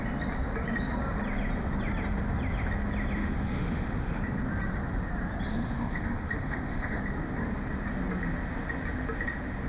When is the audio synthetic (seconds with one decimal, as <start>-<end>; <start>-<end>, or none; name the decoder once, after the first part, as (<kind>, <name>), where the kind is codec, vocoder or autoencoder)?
3.2-4.2 (autoencoder, DAC-VAE); 5.5-7.0